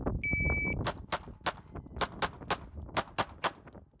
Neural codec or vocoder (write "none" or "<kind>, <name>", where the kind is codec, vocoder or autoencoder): none